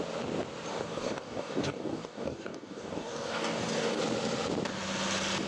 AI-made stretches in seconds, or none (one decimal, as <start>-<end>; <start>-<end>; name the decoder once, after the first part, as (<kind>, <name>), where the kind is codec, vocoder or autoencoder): 0.7-4.0 (codec, DAC)